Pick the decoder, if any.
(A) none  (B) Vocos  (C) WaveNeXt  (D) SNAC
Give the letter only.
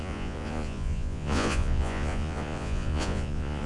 B